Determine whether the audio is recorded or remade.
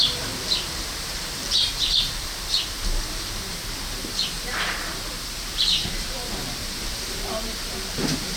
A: remade